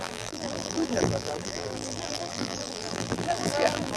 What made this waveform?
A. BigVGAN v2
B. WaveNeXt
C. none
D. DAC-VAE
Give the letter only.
A